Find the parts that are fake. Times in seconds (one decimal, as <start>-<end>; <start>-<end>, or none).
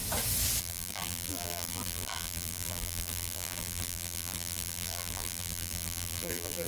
0.6-6.7